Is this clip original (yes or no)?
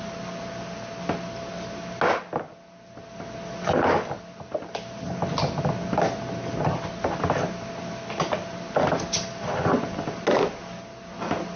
yes